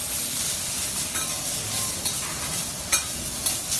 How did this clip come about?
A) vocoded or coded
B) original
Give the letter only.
B